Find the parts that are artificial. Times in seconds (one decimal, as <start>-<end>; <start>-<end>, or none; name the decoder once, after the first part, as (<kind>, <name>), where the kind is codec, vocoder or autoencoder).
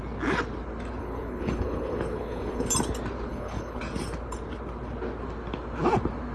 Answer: 1.0-2.7 (codec, HILCodec); 3.3-3.8